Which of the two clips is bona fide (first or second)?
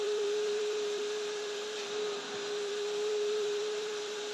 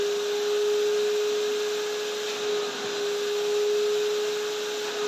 second